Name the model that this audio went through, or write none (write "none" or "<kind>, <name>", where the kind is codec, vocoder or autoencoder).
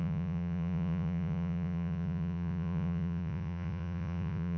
vocoder, Vocos